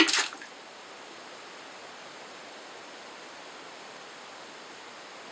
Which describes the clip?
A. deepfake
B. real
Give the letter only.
B